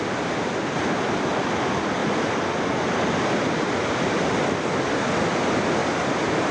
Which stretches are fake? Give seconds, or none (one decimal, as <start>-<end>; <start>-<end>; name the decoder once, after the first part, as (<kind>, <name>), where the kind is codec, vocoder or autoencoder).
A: 2.0-5.0 (vocoder, BigVGAN v2); 5.8-6.5